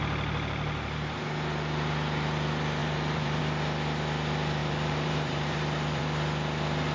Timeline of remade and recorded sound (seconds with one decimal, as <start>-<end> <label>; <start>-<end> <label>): 0.0-2.8 recorded; 2.8-3.4 remade; 3.4-4.6 recorded; 4.6-6.0 remade; 6.0-6.9 recorded